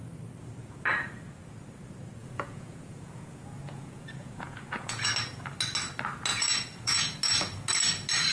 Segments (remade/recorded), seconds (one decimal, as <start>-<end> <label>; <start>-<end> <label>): 0.0-2.2 recorded; 2.2-5.1 remade; 5.1-6.3 recorded; 6.3-7.2 remade; 7.2-8.3 recorded